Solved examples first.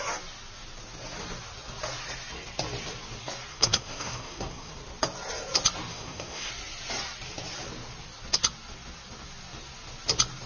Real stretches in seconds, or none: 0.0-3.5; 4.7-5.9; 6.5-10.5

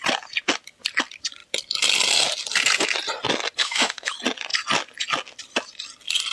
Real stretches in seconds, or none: 0.0-3.6; 4.1-6.3

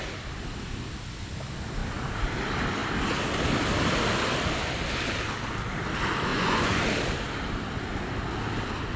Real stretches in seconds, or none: 0.0-6.3; 6.8-9.0

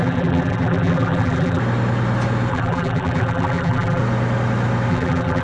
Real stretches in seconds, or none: 1.6-2.5; 4.0-4.9

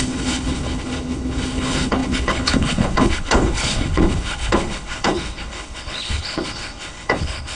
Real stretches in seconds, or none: none

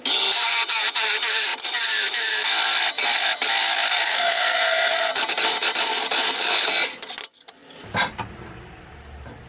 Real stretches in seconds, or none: 0.0-3.9; 4.9-9.5